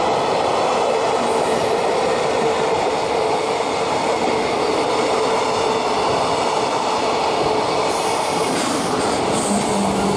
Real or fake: real